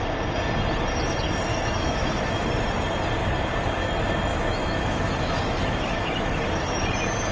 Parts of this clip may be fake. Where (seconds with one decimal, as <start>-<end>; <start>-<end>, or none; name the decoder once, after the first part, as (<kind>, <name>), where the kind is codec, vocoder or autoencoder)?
1.5-2.5 (autoencoder, DAC-VAE); 4.3-6.8